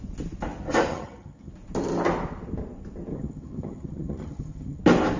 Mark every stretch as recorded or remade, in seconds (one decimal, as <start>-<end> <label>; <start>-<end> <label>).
0.0-0.9 recorded; 0.9-1.5 remade; 1.5-3.1 recorded; 3.1-4.8 remade; 4.8-5.2 recorded